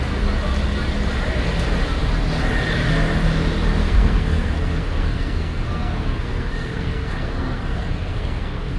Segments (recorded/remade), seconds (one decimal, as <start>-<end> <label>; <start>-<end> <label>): 0.0-3.8 recorded; 3.8-8.8 remade